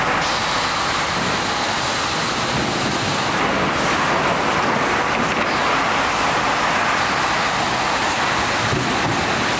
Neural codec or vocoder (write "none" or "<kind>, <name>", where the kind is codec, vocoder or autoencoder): none